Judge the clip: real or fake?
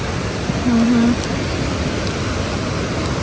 real